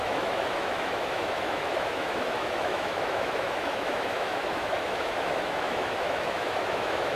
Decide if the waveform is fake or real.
fake